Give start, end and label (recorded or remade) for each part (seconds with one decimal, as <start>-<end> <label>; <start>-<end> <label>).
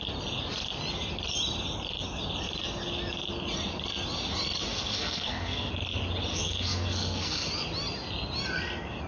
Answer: 0.0-4.7 recorded; 4.7-5.7 remade; 5.7-6.3 recorded; 6.3-7.5 remade; 7.5-9.1 recorded